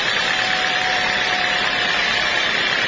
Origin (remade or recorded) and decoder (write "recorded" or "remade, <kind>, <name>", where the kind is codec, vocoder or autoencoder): remade, vocoder, BigVGAN v2